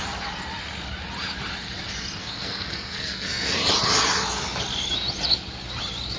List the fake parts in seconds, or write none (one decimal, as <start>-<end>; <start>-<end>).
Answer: 2.2-3.6